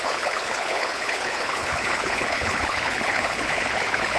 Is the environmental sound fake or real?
fake